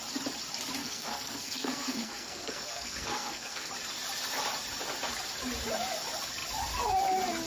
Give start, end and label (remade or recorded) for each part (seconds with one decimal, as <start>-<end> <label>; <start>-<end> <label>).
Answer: 0.0-0.8 recorded; 0.8-3.7 remade; 3.7-7.5 recorded